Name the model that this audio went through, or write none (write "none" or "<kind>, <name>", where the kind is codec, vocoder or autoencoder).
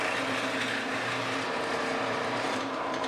vocoder, BigVGAN v2